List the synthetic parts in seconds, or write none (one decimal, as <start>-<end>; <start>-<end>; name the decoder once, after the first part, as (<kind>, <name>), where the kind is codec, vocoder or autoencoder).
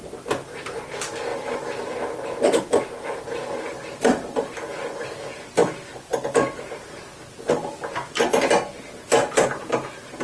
none